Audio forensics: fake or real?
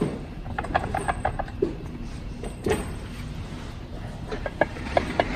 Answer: fake